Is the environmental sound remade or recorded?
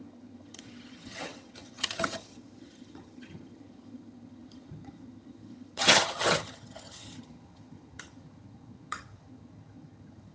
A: remade